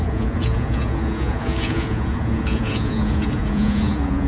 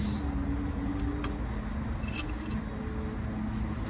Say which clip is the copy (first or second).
first